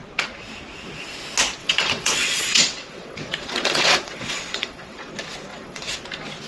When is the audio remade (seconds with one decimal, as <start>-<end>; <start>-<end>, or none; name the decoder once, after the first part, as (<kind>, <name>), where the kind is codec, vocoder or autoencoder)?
1.6-5.1 (vocoder, WaveNeXt); 5.5-6.0